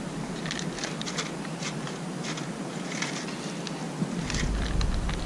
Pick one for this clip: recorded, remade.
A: recorded